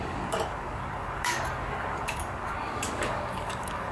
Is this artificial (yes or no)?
yes